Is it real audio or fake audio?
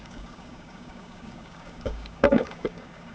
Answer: fake